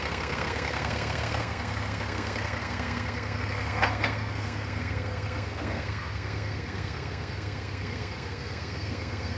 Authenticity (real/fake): fake